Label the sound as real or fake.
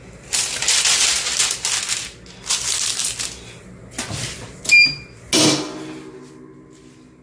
real